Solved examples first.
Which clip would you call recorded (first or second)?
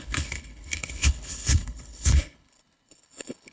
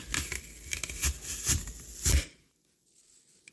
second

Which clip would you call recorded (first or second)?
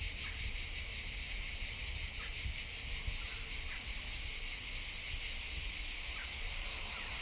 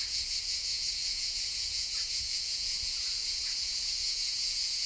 first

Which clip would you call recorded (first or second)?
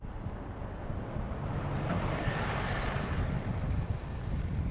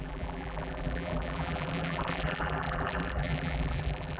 first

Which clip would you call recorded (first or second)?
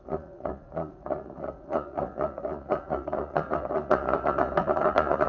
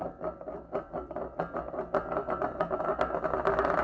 second